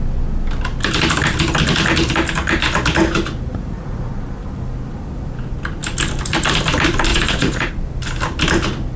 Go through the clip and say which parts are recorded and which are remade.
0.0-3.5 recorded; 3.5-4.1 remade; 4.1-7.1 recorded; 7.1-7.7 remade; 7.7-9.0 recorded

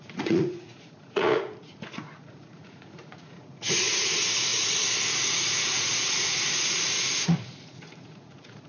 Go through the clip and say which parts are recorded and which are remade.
0.0-8.7 remade

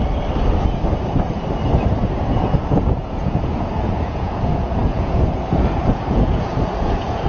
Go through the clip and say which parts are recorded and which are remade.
0.0-2.4 recorded; 2.4-7.3 remade

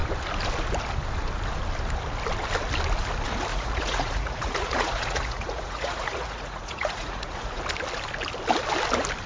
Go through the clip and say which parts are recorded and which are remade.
0.0-3.5 recorded; 3.5-7.6 remade; 7.6-9.3 recorded

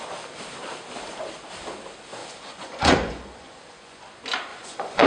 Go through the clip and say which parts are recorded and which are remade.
0.0-2.2 recorded; 2.2-4.0 remade; 4.0-4.5 recorded; 4.5-5.1 remade

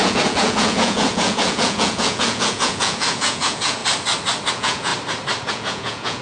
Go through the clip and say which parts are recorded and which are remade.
0.0-3.8 remade; 3.8-4.5 recorded; 4.5-4.9 remade; 4.9-5.5 recorded; 5.5-6.2 remade

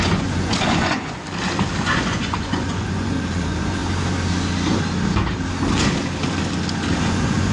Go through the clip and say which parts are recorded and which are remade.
0.0-1.2 remade; 1.2-1.8 recorded; 1.8-3.8 remade; 3.8-7.0 recorded; 7.0-7.5 remade